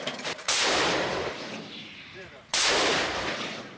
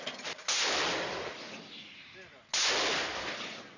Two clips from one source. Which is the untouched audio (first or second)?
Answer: second